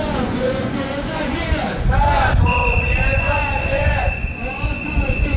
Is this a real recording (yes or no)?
no